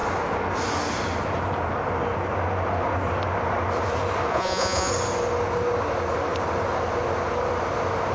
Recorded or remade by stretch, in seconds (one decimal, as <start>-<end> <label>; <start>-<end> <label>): 0.0-4.3 recorded; 4.3-4.9 remade; 4.9-8.1 recorded